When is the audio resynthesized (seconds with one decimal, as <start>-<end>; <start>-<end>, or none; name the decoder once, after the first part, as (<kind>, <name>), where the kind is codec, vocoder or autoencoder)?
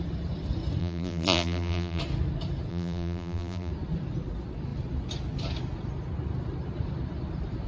0.8-2.0 (vocoder, BigVGAN v2); 2.7-3.7